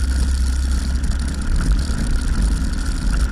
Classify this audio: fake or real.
real